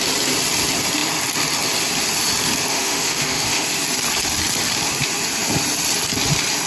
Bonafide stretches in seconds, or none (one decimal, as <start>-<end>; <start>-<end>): 0.0-2.7; 3.7-6.7

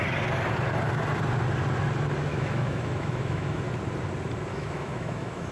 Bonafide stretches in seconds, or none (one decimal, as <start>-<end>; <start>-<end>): 0.0-2.3; 3.6-4.5